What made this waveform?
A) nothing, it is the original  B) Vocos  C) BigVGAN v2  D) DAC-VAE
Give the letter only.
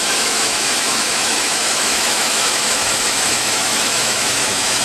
D